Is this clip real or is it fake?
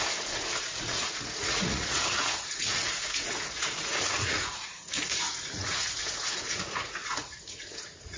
fake